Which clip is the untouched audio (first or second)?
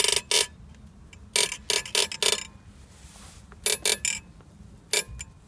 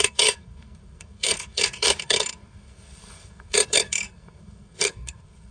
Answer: first